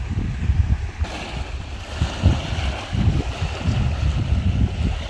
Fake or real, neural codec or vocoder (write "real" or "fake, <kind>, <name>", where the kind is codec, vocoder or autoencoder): real